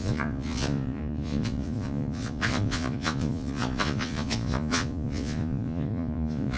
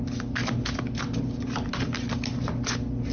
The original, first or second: second